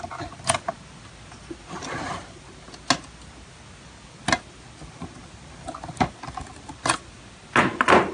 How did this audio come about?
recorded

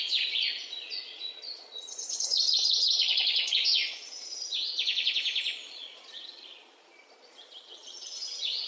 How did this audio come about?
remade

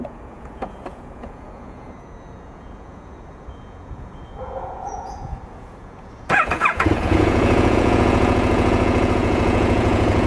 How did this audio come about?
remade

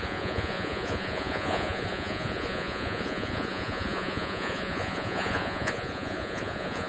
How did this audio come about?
remade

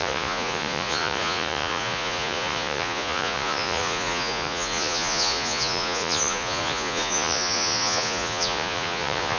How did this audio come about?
remade